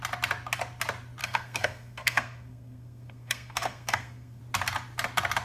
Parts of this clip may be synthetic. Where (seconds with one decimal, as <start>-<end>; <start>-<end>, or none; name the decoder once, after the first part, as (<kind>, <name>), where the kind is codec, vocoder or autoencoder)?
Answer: 1.2-4.4 (codec, SNAC)